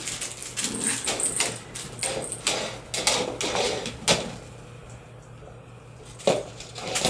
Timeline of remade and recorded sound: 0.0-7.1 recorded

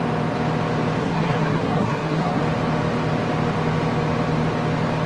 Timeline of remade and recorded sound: 0.0-1.0 recorded; 1.0-2.4 remade; 2.4-5.1 recorded

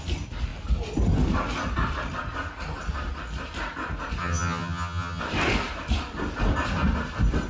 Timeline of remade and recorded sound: 0.0-4.2 recorded; 4.2-5.2 remade; 5.2-7.5 recorded

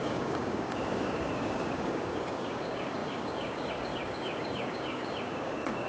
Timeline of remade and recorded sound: 0.0-5.9 remade